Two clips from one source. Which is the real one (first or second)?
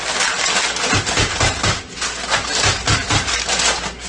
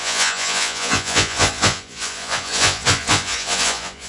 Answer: first